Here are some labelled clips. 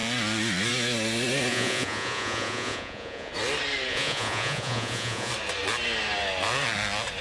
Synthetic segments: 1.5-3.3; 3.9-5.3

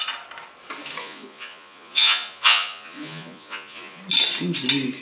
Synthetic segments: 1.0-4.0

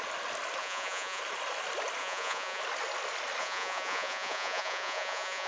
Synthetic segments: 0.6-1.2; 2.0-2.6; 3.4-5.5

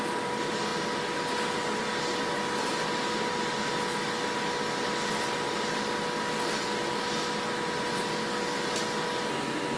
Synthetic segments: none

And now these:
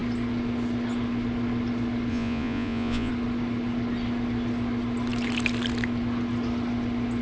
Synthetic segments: 2.1-3.1

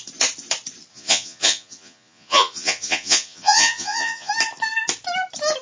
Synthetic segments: 0.9-4.3